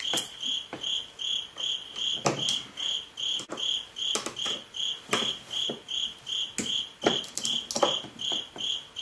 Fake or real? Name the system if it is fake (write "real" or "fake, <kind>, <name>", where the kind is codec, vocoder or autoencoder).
real